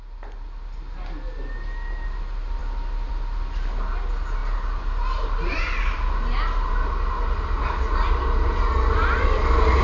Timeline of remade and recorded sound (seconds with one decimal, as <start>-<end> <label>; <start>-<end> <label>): 0.0-9.8 recorded